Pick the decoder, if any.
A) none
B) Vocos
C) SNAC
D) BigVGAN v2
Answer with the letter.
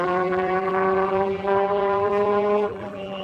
D